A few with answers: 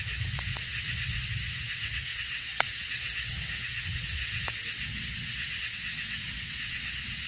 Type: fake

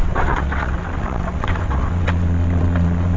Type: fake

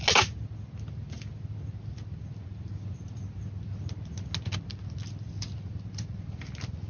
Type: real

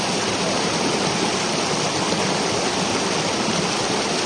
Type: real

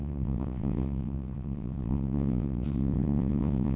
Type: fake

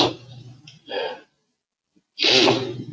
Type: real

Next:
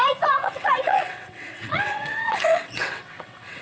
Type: fake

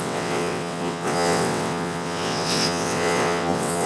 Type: fake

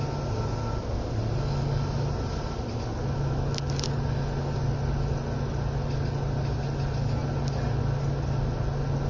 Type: real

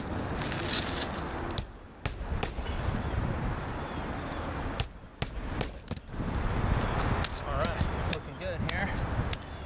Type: real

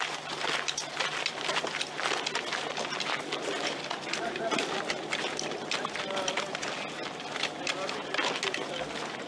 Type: real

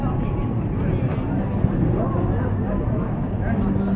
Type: real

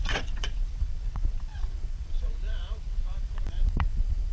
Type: fake